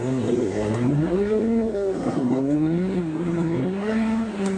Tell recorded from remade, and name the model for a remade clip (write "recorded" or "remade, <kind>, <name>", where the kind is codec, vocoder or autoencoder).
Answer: remade, codec, SNAC